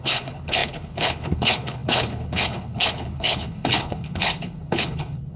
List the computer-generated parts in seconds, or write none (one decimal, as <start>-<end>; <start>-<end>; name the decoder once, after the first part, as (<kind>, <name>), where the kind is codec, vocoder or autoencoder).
0.0-5.4 (codec, HILCodec)